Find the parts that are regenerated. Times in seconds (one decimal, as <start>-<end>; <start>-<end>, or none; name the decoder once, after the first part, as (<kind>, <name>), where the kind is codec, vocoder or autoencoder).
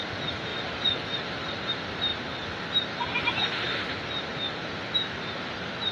4.3-5.9 (vocoder, BigVGAN v2)